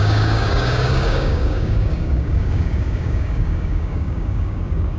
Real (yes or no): no